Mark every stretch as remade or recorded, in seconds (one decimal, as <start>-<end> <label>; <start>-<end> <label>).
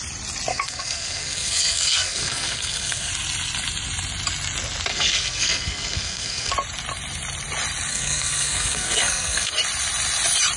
0.0-0.5 recorded; 0.5-3.1 remade; 3.1-4.9 recorded; 4.9-6.5 remade; 6.5-7.9 recorded; 7.9-9.5 remade; 9.5-10.6 recorded